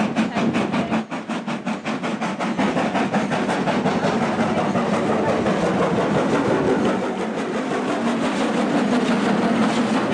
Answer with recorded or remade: recorded